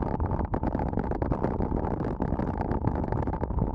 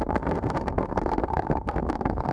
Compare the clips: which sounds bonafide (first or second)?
first